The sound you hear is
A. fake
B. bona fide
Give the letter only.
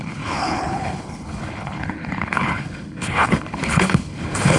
A